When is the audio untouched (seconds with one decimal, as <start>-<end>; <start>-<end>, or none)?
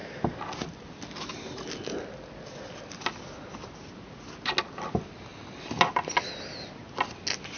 0.0-7.6